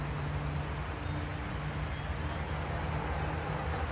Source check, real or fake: real